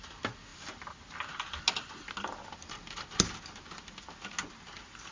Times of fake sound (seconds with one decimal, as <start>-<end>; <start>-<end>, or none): none